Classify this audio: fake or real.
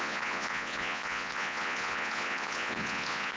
fake